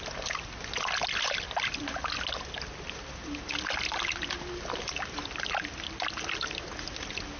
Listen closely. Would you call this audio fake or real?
real